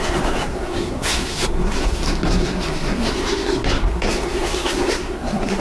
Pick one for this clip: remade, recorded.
remade